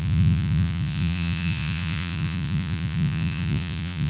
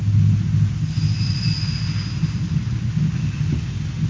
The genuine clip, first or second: second